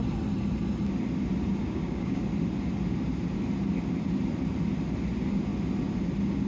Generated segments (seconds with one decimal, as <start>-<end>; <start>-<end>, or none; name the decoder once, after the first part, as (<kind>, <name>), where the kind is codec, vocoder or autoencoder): 1.6-2.2 (codec, DAC)